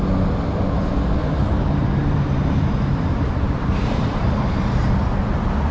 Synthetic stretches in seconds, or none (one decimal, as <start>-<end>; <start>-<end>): 1.2-4.5